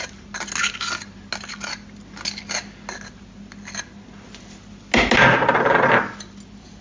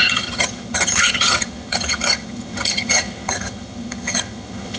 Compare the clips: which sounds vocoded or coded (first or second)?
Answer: second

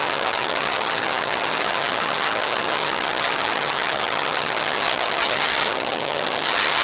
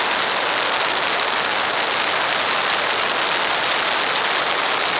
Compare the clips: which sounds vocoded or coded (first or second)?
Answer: first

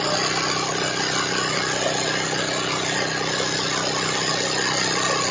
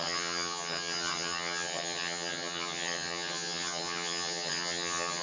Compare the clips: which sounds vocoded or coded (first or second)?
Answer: second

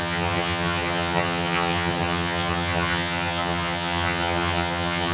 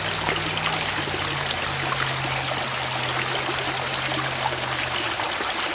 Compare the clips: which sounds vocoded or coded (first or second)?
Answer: first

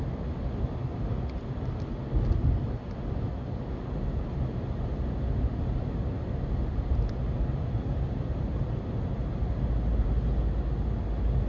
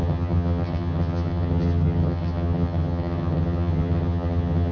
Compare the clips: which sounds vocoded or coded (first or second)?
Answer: second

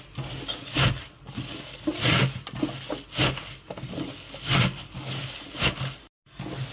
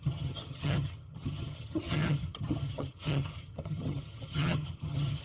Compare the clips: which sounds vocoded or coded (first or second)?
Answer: second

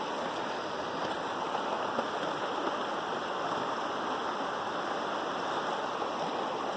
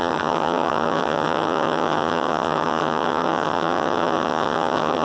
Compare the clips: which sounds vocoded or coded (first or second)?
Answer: second